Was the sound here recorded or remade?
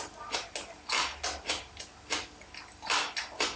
recorded